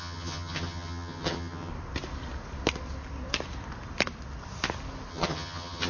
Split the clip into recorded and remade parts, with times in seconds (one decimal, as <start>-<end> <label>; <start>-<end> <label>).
0.0-1.7 remade; 1.7-5.1 recorded; 5.1-5.9 remade